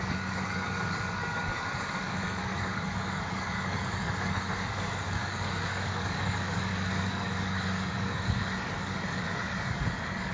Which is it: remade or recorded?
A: remade